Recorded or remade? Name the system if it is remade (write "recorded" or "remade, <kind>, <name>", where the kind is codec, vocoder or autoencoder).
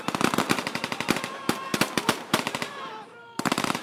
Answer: remade, vocoder, BigVGAN v2